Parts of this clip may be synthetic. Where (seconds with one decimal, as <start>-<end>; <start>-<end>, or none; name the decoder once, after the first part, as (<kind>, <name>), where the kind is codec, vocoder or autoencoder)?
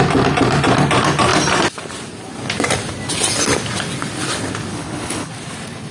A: 4.7-5.3 (codec, HILCodec)